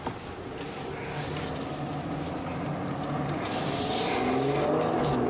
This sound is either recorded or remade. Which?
recorded